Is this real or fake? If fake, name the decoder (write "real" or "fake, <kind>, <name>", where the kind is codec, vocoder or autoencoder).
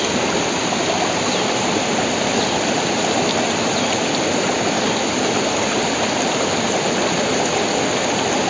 real